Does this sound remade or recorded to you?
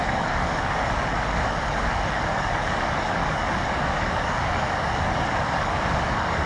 remade